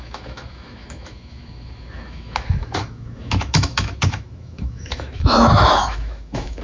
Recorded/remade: remade